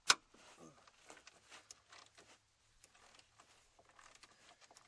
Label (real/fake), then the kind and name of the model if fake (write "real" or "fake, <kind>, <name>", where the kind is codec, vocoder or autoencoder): real